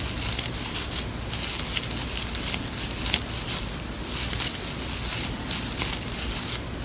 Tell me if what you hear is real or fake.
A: real